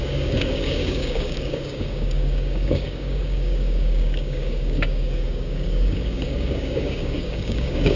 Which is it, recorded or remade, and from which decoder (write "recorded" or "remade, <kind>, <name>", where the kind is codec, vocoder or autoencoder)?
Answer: remade, codec, DAC